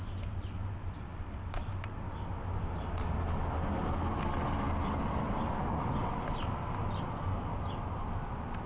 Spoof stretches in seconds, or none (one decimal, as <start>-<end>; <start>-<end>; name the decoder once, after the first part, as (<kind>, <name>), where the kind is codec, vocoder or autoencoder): none